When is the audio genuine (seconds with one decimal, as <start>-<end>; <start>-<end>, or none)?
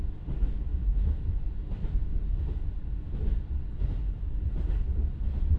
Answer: 0.0-0.7; 1.2-5.6